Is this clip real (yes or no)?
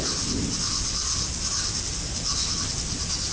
yes